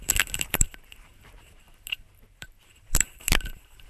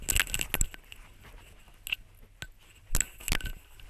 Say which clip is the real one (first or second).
second